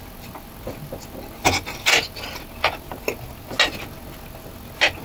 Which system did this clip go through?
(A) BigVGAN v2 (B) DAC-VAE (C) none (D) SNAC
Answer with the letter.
C